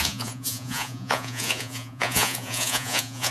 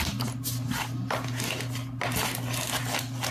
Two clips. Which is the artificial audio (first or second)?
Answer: first